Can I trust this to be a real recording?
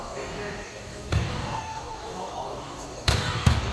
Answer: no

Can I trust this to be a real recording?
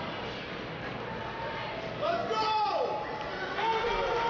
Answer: yes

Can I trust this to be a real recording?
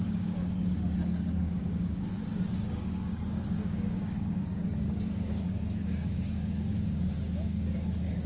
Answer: no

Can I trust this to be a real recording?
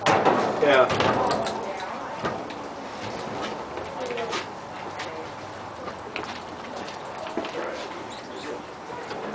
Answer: yes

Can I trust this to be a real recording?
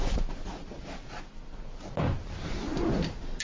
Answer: yes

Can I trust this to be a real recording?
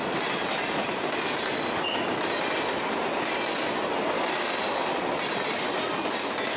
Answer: yes